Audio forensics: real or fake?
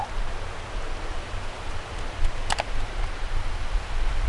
real